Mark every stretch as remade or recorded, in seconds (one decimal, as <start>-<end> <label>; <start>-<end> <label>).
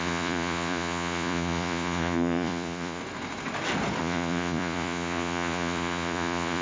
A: 0.0-3.0 remade; 3.0-4.0 recorded; 4.0-6.6 remade